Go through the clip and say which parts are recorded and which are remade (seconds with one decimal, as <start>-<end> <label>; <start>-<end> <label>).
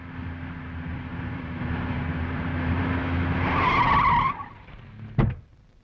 0.0-0.9 recorded; 0.9-2.8 remade; 2.8-5.8 recorded